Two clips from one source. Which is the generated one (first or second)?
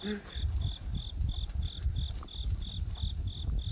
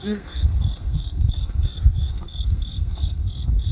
second